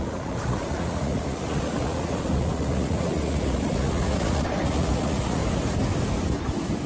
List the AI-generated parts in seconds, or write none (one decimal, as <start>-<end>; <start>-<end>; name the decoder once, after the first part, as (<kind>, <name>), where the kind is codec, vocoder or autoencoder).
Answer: 0.0-5.4 (vocoder, Vocos)